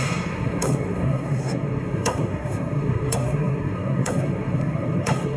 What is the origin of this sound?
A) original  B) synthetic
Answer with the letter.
B